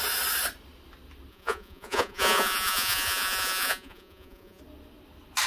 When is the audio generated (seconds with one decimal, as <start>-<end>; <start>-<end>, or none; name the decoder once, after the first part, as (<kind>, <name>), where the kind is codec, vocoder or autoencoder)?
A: 1.3-4.6 (vocoder, Vocos)